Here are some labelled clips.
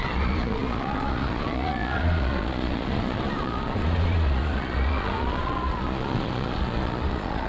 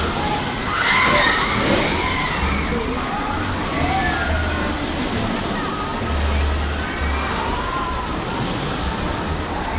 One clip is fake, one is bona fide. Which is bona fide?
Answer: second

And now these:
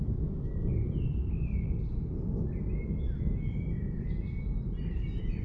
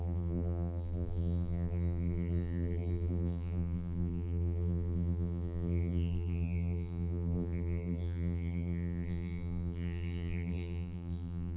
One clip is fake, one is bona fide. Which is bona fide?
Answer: first